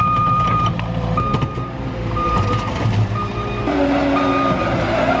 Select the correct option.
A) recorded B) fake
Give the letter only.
B